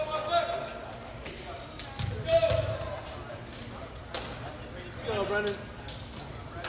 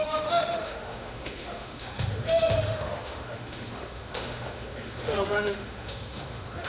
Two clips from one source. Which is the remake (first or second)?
second